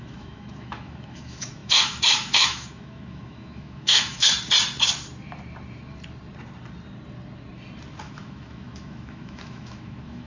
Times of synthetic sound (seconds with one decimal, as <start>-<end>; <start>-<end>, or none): 0.0-4.3; 8.0-10.3